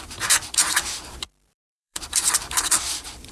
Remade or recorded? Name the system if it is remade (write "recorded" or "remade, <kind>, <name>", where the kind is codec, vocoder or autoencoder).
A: remade, vocoder, BigVGAN v2